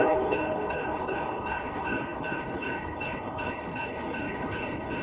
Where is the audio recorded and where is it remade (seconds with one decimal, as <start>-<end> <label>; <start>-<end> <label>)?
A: 0.0-5.0 remade